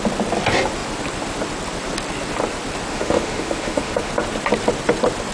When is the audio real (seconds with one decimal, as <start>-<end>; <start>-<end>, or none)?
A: 0.0-2.9; 4.1-5.3